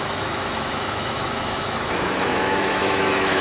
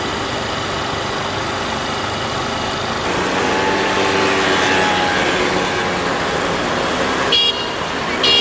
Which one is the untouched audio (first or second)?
second